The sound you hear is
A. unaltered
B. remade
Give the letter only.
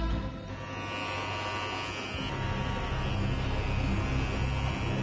A